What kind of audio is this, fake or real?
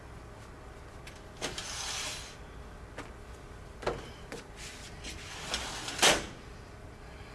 real